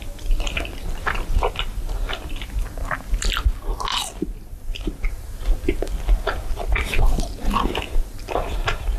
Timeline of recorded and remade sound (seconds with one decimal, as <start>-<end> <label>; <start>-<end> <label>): 0.0-9.0 recorded